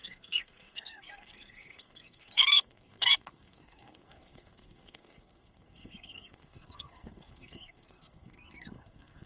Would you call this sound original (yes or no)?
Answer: no